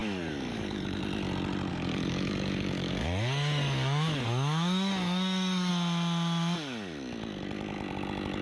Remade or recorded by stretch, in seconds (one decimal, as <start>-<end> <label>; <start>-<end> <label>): 0.0-1.0 remade; 1.0-1.7 recorded; 1.7-5.7 remade; 5.7-8.4 recorded